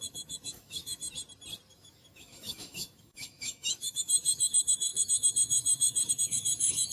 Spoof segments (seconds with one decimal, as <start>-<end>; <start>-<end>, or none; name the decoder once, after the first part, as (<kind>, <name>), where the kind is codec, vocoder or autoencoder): 0.0-1.0 (autoencoder, DAC-VAE); 1.7-6.9